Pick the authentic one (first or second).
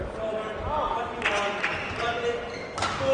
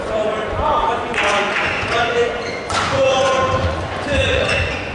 first